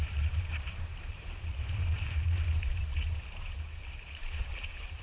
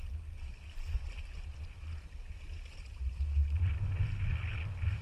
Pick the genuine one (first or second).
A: second